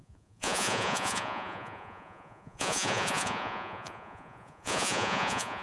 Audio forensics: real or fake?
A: fake